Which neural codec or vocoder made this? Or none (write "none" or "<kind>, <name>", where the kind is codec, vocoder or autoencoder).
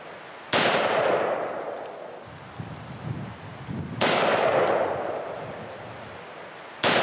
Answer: none